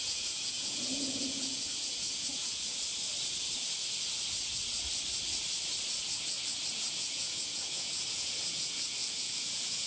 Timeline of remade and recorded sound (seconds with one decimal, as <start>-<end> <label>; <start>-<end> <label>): 0.0-2.9 remade; 2.9-6.7 recorded; 6.7-9.9 remade